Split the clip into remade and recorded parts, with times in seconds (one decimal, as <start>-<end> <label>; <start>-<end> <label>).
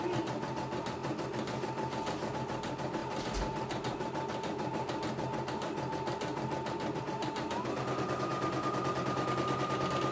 0.0-10.1 recorded